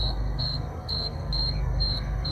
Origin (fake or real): fake